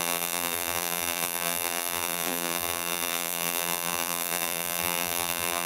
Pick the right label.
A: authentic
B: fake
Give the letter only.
B